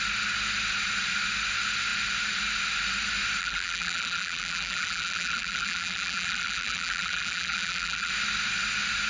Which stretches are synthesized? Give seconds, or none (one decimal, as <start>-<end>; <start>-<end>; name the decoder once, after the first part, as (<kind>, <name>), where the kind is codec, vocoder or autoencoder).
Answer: 3.4-8.1 (vocoder, BigVGAN v2)